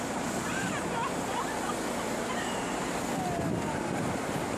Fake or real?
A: real